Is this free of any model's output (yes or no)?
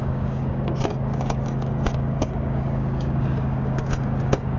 no